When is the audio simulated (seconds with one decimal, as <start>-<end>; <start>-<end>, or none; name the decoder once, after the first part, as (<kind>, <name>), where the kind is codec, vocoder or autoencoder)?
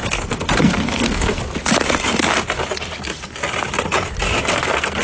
0.0-1.4 (codec, SNAC); 4.4-5.0